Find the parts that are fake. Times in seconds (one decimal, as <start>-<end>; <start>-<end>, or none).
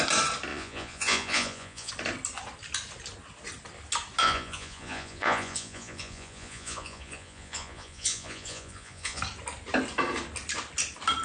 0.5-1.9; 4.2-9.2